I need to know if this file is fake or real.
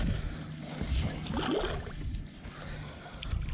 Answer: real